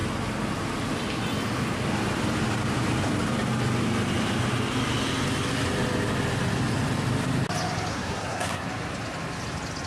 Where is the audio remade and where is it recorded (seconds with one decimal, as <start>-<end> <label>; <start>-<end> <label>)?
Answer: 0.0-7.9 recorded; 7.9-8.7 remade; 8.7-9.9 recorded